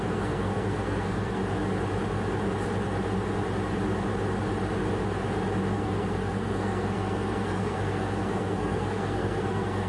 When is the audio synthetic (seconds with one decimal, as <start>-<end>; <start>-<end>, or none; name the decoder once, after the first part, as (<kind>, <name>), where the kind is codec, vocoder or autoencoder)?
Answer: 0.0-1.4 (codec, SNAC); 5.7-9.9